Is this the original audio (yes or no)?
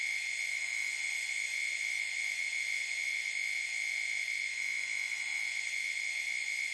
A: no